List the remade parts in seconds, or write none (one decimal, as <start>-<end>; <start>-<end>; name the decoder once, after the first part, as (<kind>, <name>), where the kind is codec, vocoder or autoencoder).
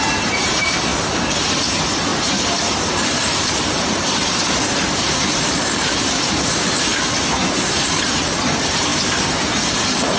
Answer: 0.0-0.9 (vocoder, BigVGAN v2); 1.6-2.1; 3.2-6.9; 7.9-8.9; 9.7-10.2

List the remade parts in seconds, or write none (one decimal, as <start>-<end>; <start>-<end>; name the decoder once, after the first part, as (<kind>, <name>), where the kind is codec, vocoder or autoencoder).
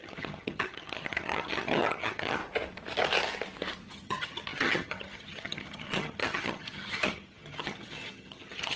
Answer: 0.0-2.4 (vocoder, HiFi-GAN); 3.9-8.8